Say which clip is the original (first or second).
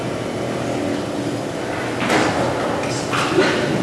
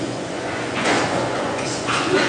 first